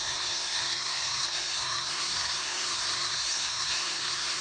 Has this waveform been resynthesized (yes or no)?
yes